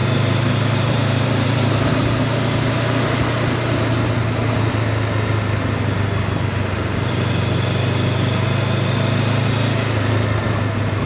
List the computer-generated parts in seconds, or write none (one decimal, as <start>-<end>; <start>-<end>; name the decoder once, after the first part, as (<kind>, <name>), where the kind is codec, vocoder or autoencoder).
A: 0.0-1.9 (vocoder, BigVGAN v2)